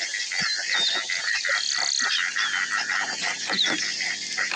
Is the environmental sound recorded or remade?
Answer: recorded